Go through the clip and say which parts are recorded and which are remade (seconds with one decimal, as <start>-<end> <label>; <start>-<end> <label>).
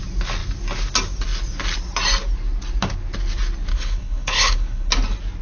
0.0-3.7 recorded; 3.7-4.9 remade; 4.9-5.4 recorded